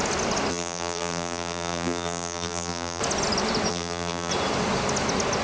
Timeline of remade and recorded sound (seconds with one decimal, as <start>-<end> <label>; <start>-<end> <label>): 0.0-0.5 recorded; 0.5-3.0 remade; 3.0-3.7 recorded; 3.7-4.3 remade; 4.3-5.4 recorded